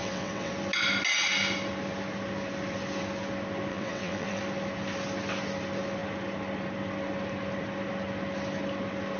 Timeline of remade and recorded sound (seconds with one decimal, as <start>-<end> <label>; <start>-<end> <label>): 0.0-0.5 remade; 0.5-3.7 recorded; 3.7-4.4 remade; 4.4-9.2 recorded